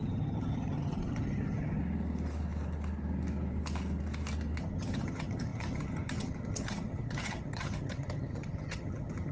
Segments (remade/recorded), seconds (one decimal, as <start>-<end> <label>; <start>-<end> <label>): 0.0-1.8 remade; 1.8-4.6 recorded; 4.6-9.3 remade